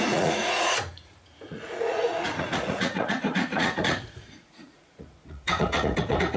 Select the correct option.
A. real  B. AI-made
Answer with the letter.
B